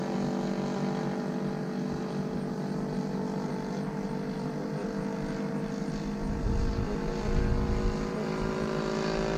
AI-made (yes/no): no